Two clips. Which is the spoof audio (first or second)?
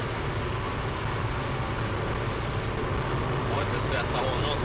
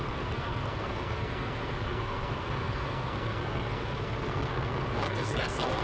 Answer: second